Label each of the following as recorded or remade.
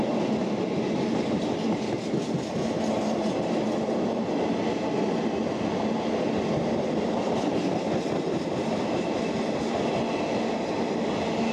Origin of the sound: recorded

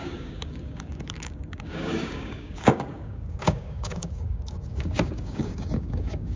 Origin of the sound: remade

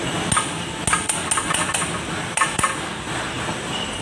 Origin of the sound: recorded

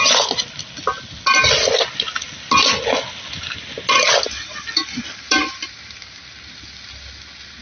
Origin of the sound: recorded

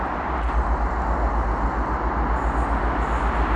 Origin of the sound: recorded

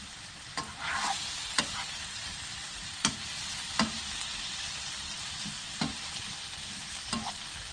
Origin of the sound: recorded